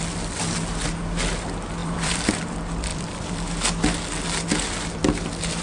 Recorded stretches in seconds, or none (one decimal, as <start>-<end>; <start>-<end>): 0.0-1.8; 2.3-2.9; 3.4-5.6